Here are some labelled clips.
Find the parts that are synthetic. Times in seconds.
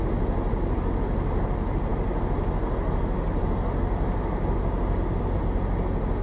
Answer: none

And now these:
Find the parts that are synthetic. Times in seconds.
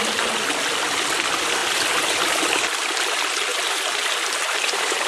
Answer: none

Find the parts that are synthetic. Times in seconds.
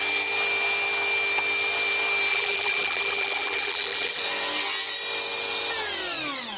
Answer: 2.3-4.2 (vocoder, BigVGAN v2)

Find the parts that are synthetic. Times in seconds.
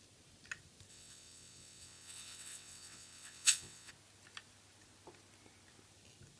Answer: 0.9-3.9 (vocoder, WaveNeXt)